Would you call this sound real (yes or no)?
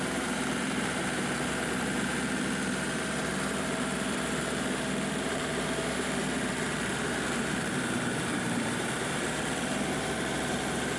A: no